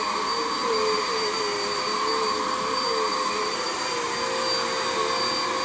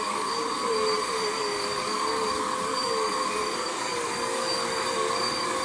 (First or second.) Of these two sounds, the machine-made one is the second